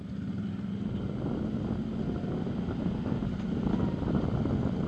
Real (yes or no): yes